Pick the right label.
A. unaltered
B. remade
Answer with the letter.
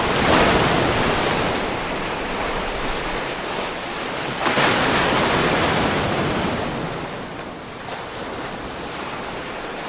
A